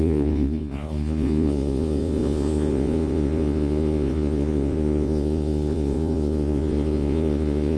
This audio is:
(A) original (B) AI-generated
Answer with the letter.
B